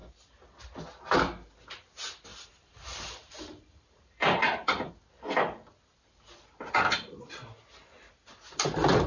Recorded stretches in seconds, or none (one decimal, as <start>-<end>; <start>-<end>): 0.0-2.3; 4.9-9.1